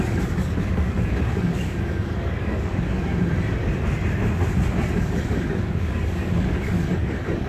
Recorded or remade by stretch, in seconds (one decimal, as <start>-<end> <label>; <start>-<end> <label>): 0.0-3.1 remade; 3.1-4.9 recorded; 4.9-7.5 remade